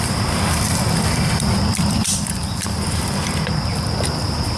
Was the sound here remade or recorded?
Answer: remade